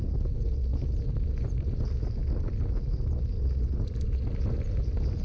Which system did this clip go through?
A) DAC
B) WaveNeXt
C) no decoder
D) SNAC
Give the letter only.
C